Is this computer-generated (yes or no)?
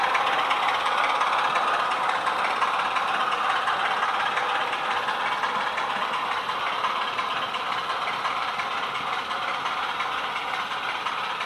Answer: yes